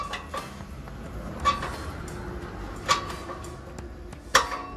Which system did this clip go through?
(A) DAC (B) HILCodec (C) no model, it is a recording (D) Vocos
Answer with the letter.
C